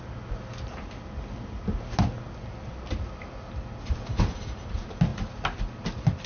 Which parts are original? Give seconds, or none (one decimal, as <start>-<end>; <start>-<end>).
0.0-6.3